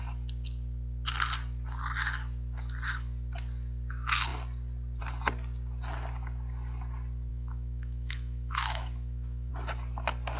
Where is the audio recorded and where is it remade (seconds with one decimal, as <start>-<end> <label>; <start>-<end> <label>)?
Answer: 0.0-7.3 recorded; 7.3-9.5 remade; 9.5-10.4 recorded